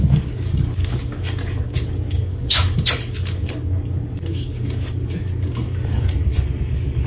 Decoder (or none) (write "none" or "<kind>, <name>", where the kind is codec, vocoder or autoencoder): codec, DAC